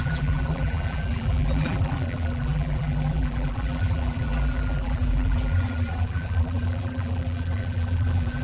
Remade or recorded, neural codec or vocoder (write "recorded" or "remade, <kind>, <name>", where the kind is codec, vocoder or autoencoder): remade, vocoder, BigVGAN v2